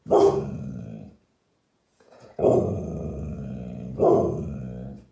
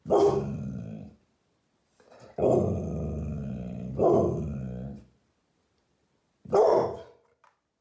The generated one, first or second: first